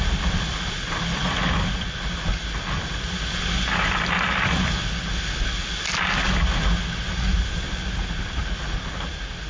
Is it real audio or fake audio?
real